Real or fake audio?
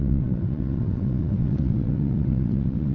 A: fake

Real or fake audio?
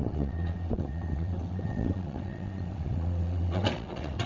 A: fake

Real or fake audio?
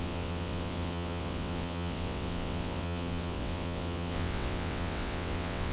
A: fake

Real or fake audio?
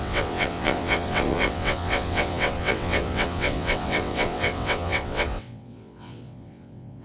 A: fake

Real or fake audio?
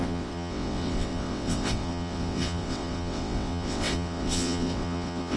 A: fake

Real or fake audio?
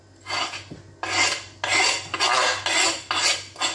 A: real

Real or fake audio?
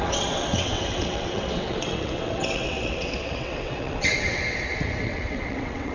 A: fake